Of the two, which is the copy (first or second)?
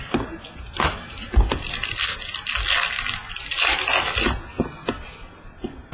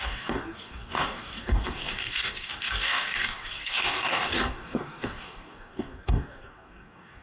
second